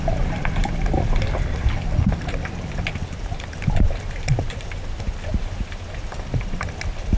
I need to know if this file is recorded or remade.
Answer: recorded